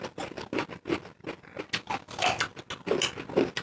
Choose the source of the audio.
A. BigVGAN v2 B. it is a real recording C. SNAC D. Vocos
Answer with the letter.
B